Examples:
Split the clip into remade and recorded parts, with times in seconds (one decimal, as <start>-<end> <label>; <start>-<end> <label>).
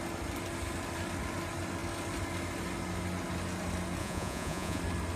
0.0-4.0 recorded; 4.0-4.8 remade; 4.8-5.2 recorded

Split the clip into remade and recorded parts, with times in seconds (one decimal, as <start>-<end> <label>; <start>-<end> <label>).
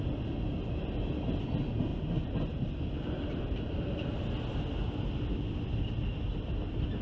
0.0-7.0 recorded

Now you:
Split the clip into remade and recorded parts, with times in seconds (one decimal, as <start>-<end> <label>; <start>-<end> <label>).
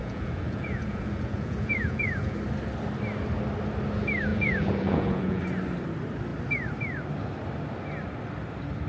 0.0-2.4 remade; 2.4-4.3 recorded; 4.3-5.4 remade; 5.4-8.9 recorded